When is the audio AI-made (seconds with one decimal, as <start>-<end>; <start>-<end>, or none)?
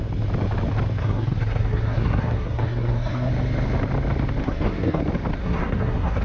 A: 1.0-3.3; 4.4-5.0; 5.4-6.2